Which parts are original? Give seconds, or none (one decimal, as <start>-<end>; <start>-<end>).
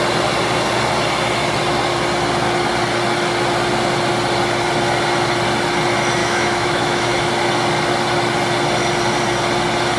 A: 0.0-6.2; 7.3-10.0